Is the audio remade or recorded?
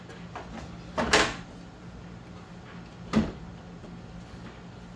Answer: recorded